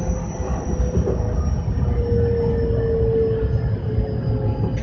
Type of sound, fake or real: real